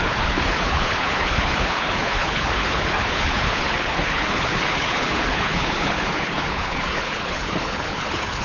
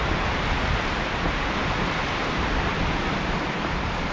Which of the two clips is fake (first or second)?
first